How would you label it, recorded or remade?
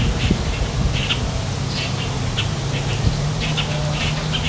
recorded